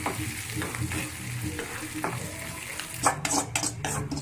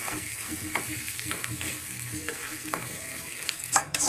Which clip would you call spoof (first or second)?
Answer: second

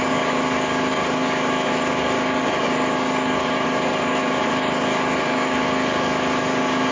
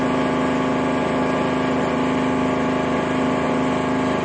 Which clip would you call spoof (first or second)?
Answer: first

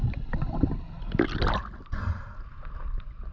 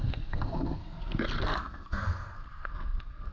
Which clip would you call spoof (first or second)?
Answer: second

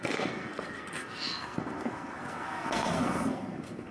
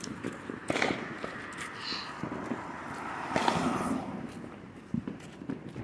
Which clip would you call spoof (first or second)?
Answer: first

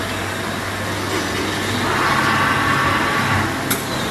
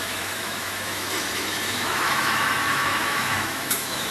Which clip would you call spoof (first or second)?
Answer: second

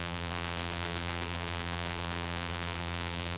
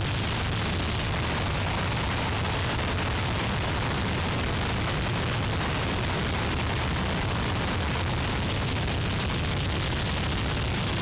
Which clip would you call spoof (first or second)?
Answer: first